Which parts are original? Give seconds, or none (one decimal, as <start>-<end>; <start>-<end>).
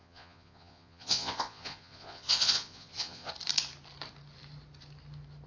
3.3-5.5